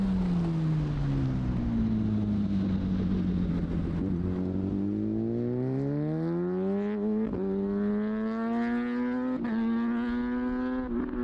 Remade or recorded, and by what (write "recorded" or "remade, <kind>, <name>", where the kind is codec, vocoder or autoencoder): recorded